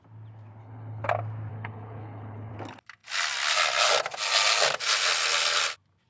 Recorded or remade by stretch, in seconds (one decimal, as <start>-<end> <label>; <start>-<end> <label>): 0.0-0.6 recorded; 0.6-1.1 remade; 1.1-1.5 recorded; 1.5-2.5 remade; 2.5-6.1 recorded